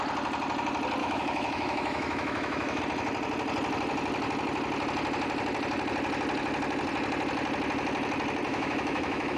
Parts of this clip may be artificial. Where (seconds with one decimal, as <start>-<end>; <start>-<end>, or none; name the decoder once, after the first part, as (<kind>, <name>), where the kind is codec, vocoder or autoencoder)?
1.0-2.8 (autoencoder, DAC-VAE); 8.5-9.4